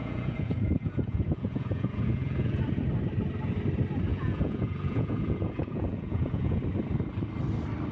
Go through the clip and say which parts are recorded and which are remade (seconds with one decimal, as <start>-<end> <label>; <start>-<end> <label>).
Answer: 0.0-2.6 remade; 2.6-4.1 recorded; 4.1-6.6 remade; 6.6-7.9 recorded